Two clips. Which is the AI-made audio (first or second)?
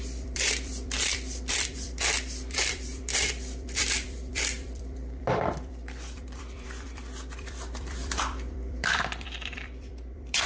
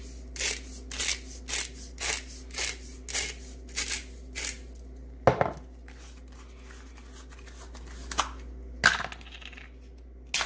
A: first